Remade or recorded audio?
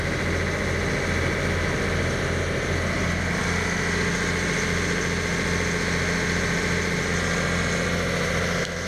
recorded